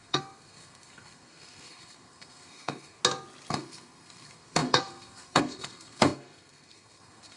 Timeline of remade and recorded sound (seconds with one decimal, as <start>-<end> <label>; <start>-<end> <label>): 0.0-3.0 remade; 3.0-3.5 recorded; 3.5-7.4 remade